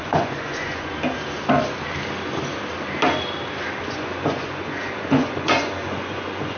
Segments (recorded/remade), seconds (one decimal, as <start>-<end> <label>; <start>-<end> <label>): 0.0-0.9 remade; 0.9-3.8 recorded; 3.8-6.6 remade